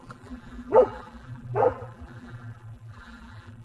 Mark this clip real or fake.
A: fake